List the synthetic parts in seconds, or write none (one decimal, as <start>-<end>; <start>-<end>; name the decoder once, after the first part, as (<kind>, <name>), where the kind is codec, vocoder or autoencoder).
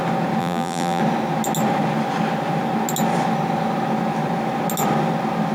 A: 0.4-1.0 (vocoder, BigVGAN v2)